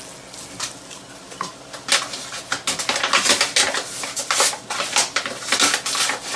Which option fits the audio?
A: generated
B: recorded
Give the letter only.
B